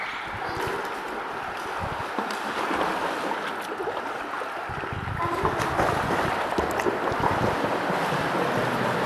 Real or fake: real